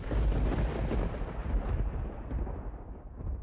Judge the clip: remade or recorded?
remade